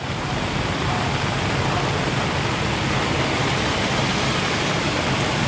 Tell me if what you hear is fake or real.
real